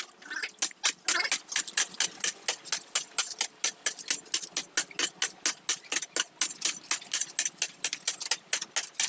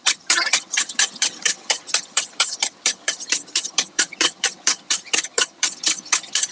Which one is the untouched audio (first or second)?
first